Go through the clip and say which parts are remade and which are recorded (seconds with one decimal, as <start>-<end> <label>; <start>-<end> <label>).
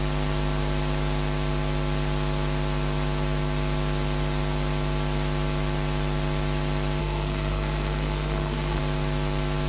0.0-7.0 recorded; 7.0-8.8 remade; 8.8-9.7 recorded